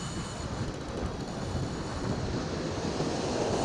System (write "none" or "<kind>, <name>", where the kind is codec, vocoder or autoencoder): none